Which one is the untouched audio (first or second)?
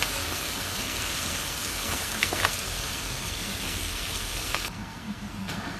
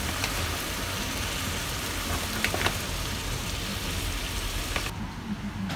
second